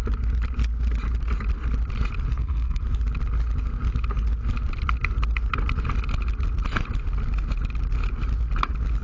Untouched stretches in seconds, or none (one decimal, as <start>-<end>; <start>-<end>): 0.0-2.3; 2.8-9.0